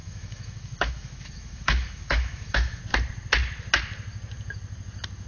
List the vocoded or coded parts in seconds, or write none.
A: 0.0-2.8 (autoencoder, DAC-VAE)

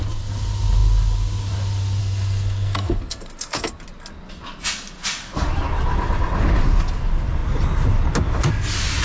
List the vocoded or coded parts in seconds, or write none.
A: 2.0-3.7 (codec, SNAC)

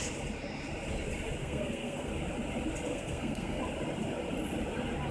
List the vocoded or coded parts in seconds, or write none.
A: 1.4-2.1 (codec, SNAC); 2.9-3.6